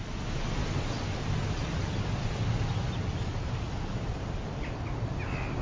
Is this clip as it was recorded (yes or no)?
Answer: yes